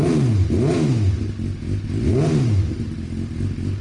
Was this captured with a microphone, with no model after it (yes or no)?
yes